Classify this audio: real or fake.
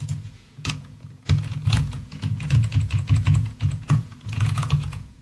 fake